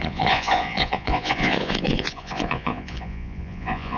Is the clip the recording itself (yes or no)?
no